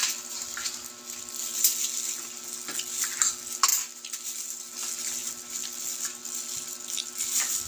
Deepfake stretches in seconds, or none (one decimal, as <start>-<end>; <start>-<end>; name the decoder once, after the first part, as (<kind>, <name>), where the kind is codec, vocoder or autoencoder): 3.7-4.6 (vocoder, BigVGAN v2); 6.2-7.7